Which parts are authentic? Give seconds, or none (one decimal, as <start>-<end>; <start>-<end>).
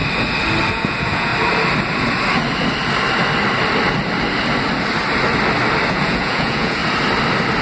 0.0-0.7; 1.3-5.9; 6.8-7.6